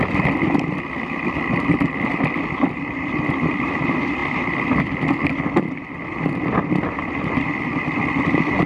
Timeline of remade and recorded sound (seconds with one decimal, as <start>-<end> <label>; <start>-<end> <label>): 0.0-8.7 recorded